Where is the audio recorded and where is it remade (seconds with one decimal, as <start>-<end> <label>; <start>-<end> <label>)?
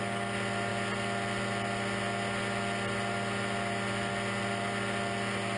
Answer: 0.0-5.6 recorded